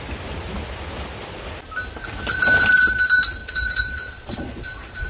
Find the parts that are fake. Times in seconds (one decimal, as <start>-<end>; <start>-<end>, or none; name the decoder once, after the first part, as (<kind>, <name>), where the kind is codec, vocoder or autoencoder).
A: 3.4-5.1 (vocoder, Vocos)